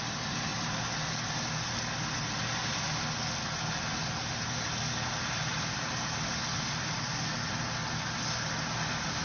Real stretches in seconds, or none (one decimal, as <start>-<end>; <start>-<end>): 0.0-9.2